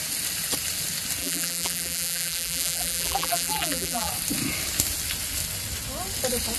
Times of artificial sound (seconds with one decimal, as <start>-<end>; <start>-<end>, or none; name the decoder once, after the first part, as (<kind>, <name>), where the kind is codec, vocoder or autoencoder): 1.2-4.1 (vocoder, BigVGAN v2)

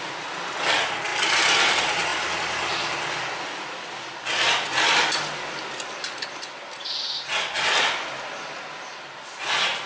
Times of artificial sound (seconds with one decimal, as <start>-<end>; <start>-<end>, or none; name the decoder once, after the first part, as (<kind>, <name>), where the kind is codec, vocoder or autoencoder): none

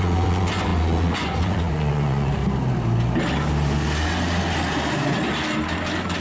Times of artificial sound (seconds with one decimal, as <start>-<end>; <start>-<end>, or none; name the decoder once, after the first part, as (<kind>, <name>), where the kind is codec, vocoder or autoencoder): 0.0-2.4 (vocoder, Vocos)

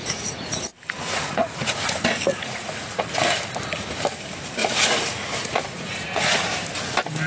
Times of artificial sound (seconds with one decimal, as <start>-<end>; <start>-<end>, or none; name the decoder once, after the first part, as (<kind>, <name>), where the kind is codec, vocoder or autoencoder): 0.0-1.9 (vocoder, Vocos); 2.3-3.0; 4.6-6.5

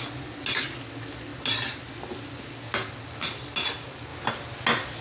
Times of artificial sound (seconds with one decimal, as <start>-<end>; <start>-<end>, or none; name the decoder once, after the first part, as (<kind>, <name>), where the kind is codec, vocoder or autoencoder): none

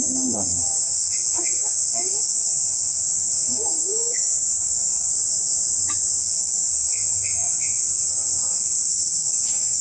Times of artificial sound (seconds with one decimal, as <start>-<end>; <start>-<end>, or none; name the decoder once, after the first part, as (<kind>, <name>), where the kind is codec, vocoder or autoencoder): 0.0-5.1 (codec, SNAC); 6.2-9.8

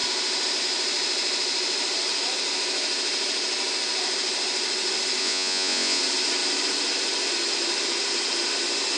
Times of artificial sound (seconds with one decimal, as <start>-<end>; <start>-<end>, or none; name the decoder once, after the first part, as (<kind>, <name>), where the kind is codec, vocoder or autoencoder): 5.2-6.0 (vocoder, Vocos)

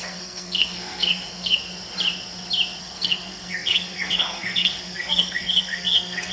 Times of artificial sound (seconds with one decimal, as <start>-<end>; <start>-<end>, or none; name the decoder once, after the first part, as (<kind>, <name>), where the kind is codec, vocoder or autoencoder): 0.0-1.7 (codec, SNAC); 2.8-6.3